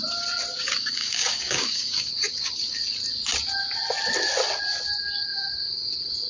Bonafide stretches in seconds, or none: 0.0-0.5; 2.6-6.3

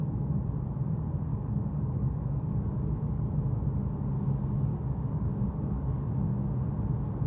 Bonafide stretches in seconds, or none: 0.0-1.3; 3.4-4.7; 6.1-7.3

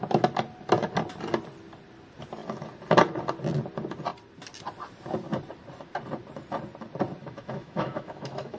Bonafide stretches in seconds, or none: 0.0-7.2

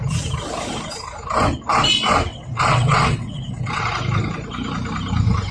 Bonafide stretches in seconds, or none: 0.0-2.3; 3.8-5.5

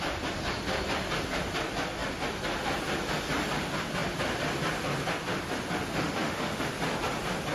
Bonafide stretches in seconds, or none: 0.0-5.9; 6.7-7.5

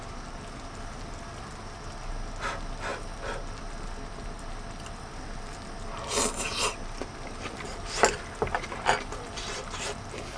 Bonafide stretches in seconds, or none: 0.0-10.4